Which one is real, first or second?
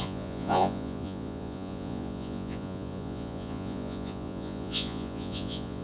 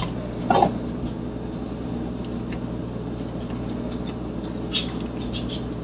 second